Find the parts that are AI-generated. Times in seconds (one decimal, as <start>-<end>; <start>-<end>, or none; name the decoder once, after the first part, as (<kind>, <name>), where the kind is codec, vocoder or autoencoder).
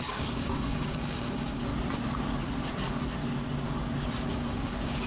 0.0-1.7 (codec, DAC); 4.3-5.1